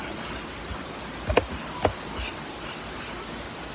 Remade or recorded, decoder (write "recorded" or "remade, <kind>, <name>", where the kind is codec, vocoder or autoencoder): recorded